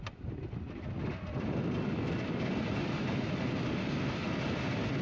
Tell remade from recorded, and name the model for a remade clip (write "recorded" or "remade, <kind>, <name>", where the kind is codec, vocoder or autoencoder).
recorded